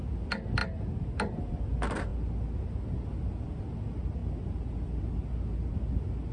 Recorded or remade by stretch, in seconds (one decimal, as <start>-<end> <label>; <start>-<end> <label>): 0.0-6.3 recorded